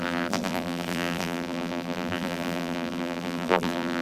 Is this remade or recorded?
remade